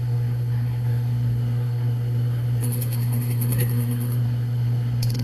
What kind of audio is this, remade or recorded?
remade